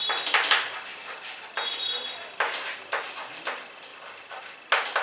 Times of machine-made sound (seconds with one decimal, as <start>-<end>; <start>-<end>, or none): 3.9-4.4